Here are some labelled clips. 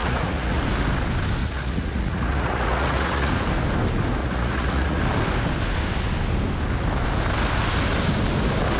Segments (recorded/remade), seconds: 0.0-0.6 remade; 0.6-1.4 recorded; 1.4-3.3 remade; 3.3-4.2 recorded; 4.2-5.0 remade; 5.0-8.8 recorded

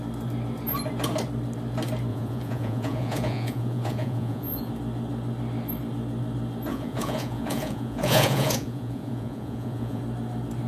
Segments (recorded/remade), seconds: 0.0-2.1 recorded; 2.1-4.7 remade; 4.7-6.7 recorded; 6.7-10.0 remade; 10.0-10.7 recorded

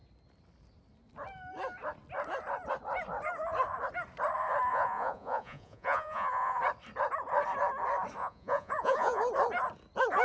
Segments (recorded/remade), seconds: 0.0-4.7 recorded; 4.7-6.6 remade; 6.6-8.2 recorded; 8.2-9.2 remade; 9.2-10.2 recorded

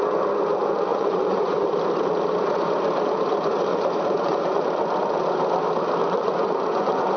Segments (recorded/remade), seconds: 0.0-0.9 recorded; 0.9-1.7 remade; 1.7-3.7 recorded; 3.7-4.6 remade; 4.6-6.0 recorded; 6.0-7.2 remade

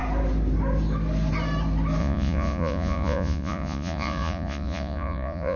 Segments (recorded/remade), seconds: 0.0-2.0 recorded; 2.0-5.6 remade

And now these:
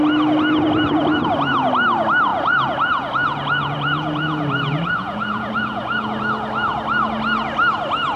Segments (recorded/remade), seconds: 0.0-2.3 recorded; 2.3-6.2 remade; 6.2-8.2 recorded

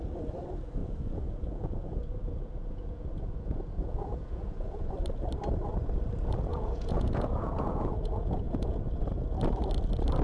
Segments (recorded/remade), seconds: 0.0-0.8 recorded; 0.8-4.9 remade; 4.9-6.5 recorded; 6.5-8.8 remade; 8.8-10.2 recorded

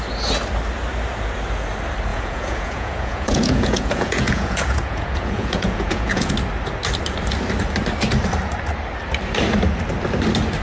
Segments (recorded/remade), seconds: 0.0-2.1 recorded; 2.1-6.3 remade; 6.3-10.6 recorded